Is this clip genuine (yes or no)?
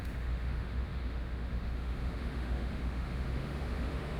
no